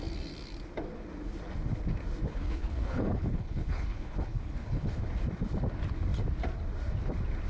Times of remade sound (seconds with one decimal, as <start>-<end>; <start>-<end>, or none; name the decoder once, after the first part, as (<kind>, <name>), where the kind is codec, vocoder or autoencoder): 2.3-5.0 (codec, HILCodec)